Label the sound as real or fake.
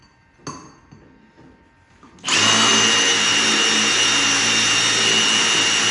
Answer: real